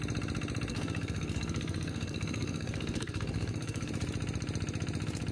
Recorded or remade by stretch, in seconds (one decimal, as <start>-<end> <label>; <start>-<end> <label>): 0.0-0.7 recorded; 0.7-3.9 remade; 3.9-5.3 recorded